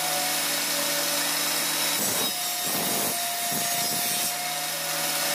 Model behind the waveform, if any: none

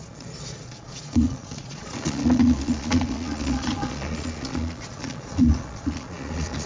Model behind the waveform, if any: vocoder, Vocos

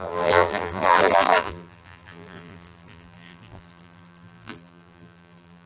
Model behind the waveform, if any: vocoder, BigVGAN v2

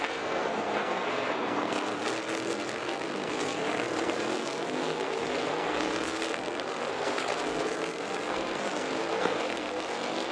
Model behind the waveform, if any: codec, SNAC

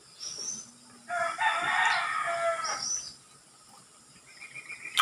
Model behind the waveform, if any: none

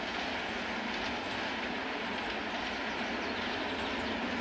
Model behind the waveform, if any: none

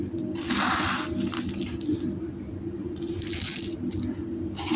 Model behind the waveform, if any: none